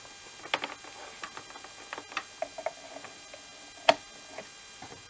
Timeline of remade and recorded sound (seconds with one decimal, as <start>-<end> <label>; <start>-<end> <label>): 0.0-5.1 recorded